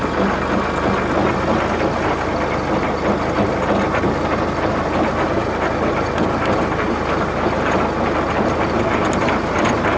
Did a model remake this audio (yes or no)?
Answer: no